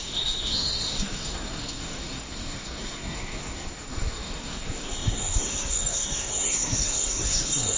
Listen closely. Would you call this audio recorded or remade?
remade